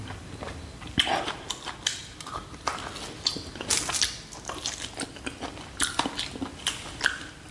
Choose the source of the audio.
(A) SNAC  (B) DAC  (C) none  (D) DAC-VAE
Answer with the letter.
C